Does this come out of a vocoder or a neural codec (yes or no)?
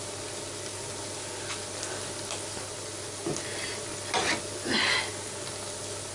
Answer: no